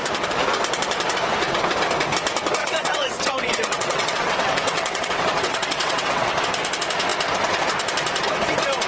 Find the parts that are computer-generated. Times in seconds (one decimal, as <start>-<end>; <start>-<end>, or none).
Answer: 2.6-6.3